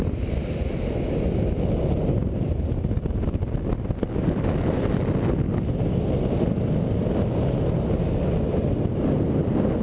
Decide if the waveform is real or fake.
real